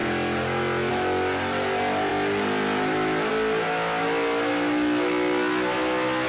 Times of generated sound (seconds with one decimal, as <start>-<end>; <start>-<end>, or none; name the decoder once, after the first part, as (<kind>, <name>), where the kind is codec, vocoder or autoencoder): none